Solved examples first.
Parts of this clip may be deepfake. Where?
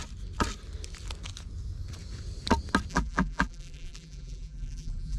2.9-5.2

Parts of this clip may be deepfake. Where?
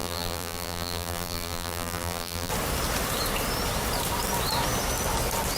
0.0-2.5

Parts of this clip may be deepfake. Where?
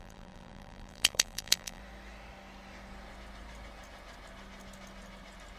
0.0-1.8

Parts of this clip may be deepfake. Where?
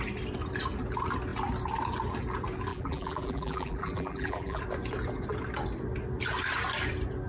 2.7-4.6